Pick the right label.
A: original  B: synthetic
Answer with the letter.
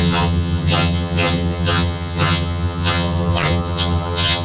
B